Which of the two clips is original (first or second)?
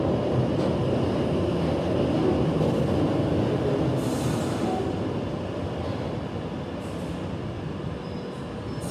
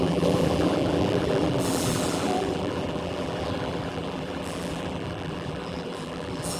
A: first